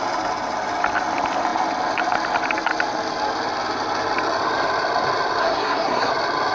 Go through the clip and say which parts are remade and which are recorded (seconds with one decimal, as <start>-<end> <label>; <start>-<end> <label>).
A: 0.0-5.4 recorded; 5.4-6.1 remade; 6.1-6.5 recorded